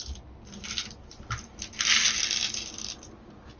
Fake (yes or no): no